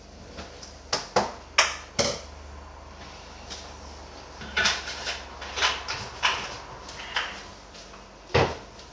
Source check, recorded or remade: recorded